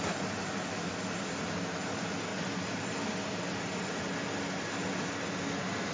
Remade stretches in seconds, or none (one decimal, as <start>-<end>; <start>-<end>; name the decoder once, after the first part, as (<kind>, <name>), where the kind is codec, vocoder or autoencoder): none